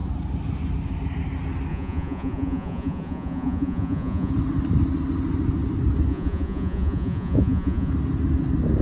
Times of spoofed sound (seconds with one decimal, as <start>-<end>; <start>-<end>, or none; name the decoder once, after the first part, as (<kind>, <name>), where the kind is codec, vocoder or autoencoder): 1.7-4.3 (vocoder, Vocos); 6.1-7.9